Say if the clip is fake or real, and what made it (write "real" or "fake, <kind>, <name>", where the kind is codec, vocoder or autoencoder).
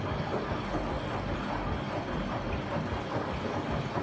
real